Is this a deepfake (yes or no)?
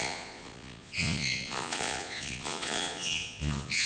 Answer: yes